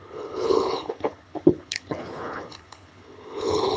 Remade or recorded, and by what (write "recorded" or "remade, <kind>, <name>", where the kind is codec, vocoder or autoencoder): remade, codec, HILCodec